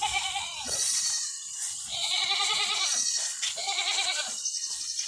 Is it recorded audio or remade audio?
remade